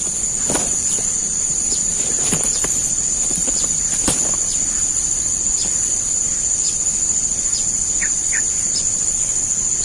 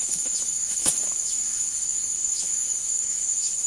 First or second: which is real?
first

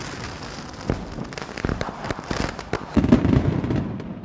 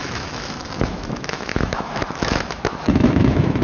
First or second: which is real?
first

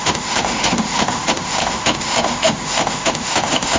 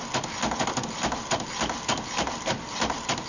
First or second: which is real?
second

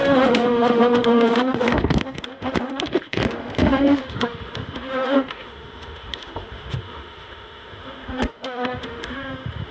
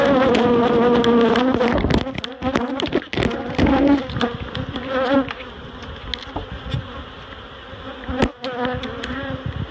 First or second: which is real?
second